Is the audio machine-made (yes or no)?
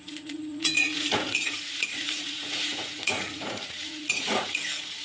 yes